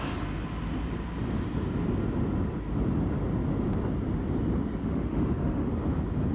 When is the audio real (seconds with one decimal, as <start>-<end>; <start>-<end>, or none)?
0.0-4.8; 5.7-6.3